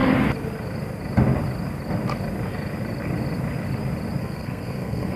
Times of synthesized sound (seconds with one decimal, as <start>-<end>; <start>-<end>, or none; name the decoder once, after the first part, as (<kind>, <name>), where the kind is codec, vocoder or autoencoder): 4.2-5.2 (codec, SNAC)